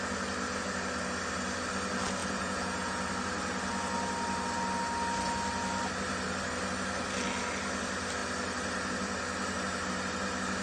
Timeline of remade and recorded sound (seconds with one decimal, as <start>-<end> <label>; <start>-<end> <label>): 0.0-2.2 recorded; 2.2-3.0 remade; 3.0-10.6 recorded